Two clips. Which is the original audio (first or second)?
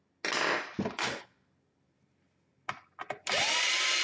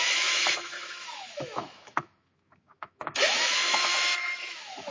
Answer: first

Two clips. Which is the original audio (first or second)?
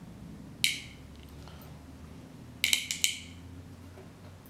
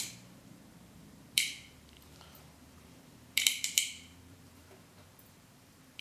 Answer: first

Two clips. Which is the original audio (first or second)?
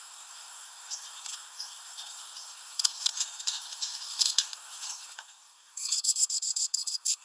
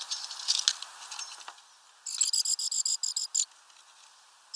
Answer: second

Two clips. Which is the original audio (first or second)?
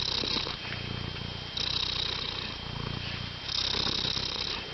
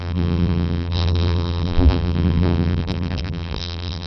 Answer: first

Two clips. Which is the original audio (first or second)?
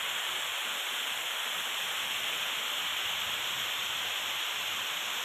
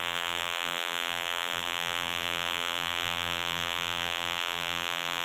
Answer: first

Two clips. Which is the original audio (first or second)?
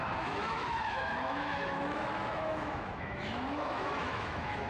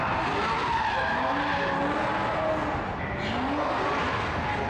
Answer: second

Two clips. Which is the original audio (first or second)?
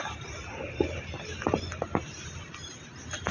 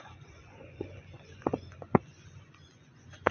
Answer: first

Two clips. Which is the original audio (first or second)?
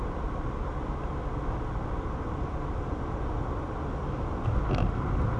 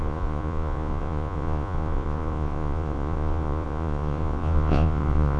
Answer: first